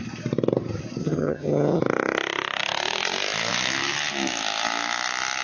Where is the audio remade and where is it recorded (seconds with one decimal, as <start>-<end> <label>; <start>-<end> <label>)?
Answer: 0.0-1.0 recorded; 1.0-1.8 remade; 1.8-5.4 recorded